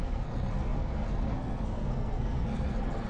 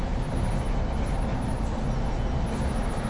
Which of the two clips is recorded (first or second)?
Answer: second